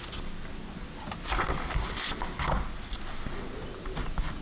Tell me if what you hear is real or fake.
real